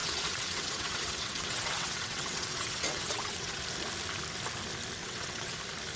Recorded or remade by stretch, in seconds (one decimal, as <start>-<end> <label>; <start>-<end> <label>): 0.0-3.6 remade; 3.6-5.0 recorded; 5.0-5.6 remade; 5.6-6.0 recorded